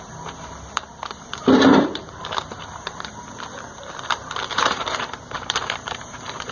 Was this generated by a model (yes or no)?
yes